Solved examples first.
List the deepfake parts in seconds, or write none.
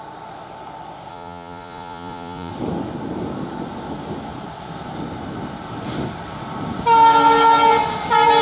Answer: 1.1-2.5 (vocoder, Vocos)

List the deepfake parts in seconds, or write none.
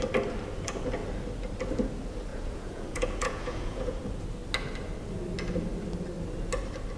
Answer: 2.3-4.0 (vocoder, Vocos)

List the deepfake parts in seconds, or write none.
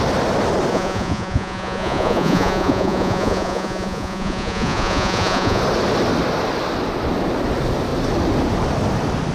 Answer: 0.7-5.6 (vocoder, Vocos)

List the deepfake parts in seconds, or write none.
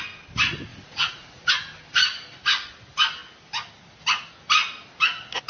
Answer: 0.7-1.5 (vocoder, Vocos)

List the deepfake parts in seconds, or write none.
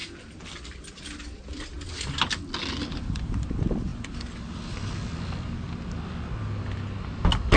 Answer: none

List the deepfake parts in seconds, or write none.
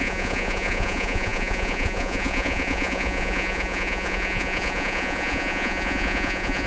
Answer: 0.0-6.7 (vocoder, Vocos)